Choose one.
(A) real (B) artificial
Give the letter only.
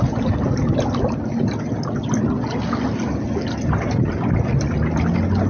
A